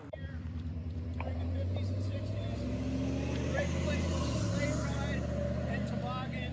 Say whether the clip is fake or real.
real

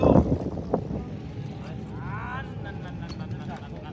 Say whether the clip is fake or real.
real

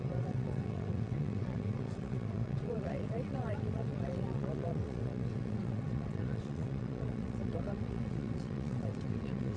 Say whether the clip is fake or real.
fake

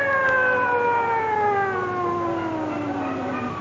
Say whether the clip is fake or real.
real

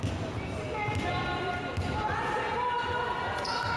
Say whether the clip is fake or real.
real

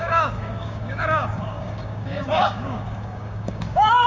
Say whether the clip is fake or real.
fake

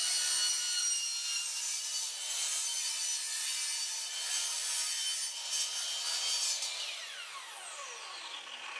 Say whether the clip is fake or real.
real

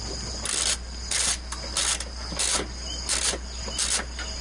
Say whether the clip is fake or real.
real